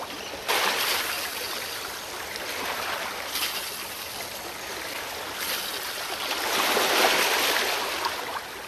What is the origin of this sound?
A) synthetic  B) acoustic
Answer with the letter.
B